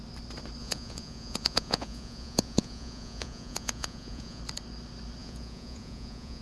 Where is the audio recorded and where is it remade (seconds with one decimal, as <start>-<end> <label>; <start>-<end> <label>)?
0.0-0.6 recorded; 0.6-4.4 remade; 4.4-5.2 recorded; 5.2-6.4 remade